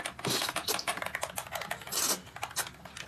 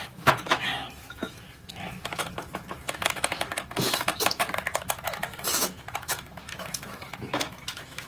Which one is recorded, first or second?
first